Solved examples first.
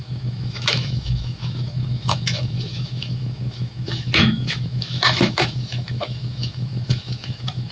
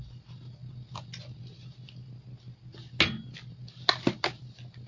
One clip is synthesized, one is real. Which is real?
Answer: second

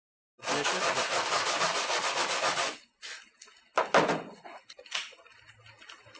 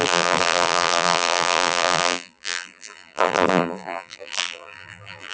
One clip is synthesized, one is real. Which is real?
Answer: first